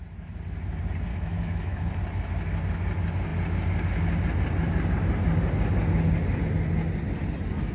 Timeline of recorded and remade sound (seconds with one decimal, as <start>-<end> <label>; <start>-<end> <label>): 0.0-1.1 recorded; 1.1-1.8 remade; 1.8-7.7 recorded